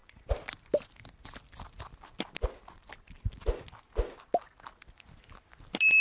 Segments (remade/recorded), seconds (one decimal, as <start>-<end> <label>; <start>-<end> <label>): 0.0-6.0 recorded